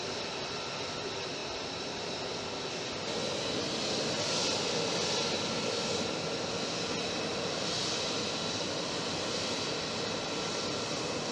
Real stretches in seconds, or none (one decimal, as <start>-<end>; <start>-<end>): 0.0-11.3